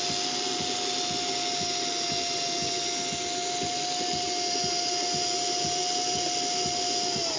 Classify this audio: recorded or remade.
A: recorded